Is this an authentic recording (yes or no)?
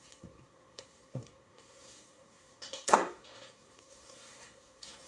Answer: no